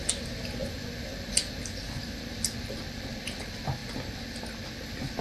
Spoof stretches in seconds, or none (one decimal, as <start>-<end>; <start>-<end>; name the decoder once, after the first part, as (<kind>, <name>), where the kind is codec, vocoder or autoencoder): none